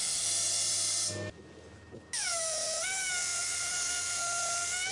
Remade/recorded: recorded